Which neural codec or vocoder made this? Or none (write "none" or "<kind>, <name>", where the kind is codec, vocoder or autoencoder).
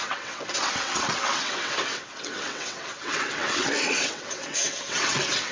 vocoder, WaveNeXt